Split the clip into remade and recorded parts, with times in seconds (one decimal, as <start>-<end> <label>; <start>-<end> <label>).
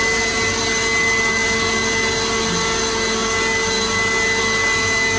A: 0.0-5.2 recorded